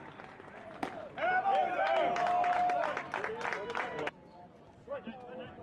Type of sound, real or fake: real